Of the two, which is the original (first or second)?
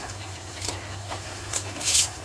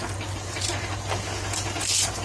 second